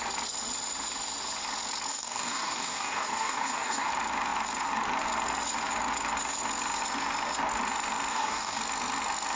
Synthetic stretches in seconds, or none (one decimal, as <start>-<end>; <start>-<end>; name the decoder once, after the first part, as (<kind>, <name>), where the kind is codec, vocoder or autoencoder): 1.9-3.9 (codec, DAC); 8.1-8.6